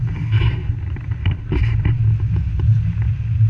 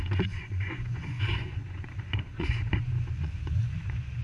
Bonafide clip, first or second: first